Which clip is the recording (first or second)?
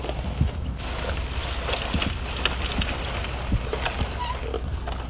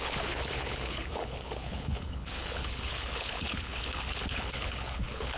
first